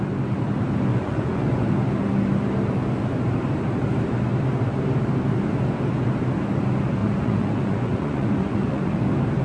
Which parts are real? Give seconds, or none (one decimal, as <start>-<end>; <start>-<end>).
0.0-0.9; 1.7-7.0; 9.0-9.4

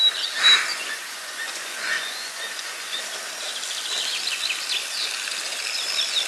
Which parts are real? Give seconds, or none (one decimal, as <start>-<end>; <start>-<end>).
0.0-0.7; 3.0-6.3